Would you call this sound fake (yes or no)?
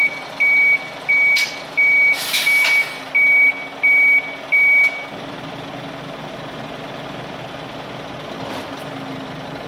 no